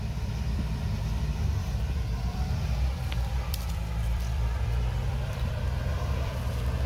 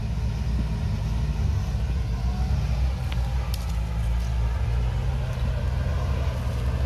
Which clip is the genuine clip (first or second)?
second